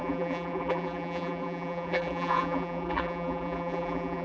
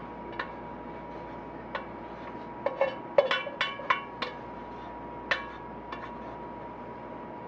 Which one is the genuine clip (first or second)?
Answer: second